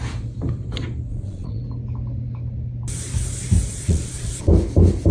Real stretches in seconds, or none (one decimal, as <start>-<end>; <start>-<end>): 0.0-1.1; 1.6-3.7; 4.5-5.1